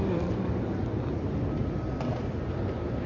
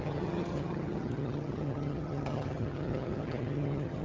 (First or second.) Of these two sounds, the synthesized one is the second